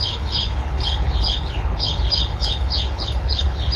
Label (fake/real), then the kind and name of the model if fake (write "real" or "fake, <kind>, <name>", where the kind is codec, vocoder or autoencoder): fake, codec, HILCodec